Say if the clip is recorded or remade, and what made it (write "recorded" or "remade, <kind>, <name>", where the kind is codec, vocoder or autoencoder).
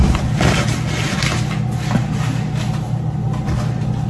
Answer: recorded